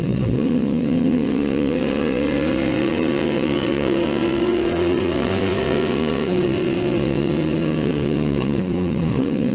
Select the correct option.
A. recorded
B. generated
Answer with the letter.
B